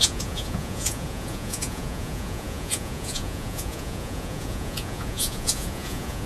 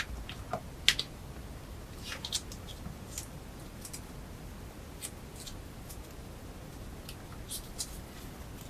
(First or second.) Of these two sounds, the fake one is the first